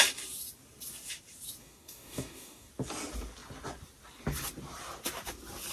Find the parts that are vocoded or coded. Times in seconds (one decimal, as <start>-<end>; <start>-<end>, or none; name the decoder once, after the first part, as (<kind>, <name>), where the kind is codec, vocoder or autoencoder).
1.6-2.7 (codec, DAC)